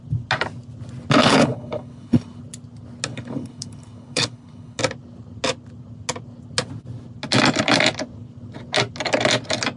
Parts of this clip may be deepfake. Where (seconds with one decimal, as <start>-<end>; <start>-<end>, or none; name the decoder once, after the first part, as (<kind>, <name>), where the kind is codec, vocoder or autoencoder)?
1.2-2.4 (codec, HILCodec); 3.1-4.8